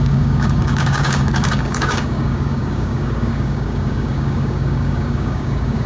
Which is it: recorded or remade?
remade